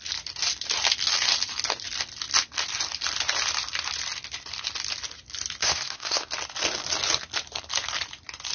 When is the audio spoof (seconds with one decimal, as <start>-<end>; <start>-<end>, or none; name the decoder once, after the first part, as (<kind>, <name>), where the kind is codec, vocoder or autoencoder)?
5.6-6.3 (codec, SNAC)